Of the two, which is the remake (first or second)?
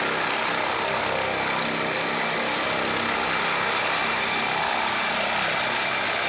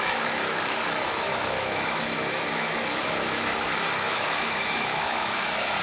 second